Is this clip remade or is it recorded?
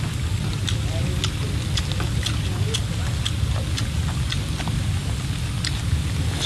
recorded